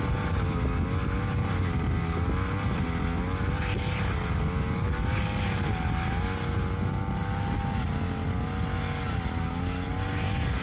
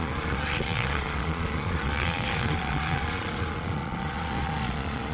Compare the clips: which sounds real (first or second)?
first